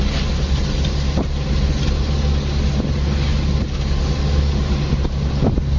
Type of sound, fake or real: real